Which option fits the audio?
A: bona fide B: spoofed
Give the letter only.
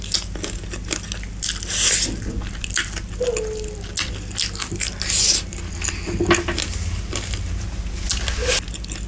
A